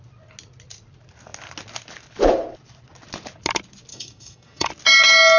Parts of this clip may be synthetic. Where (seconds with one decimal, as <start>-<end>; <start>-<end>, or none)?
3.9-4.7